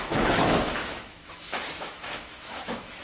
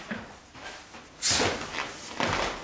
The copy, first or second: first